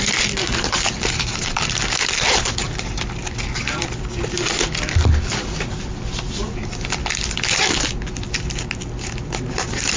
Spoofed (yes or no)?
no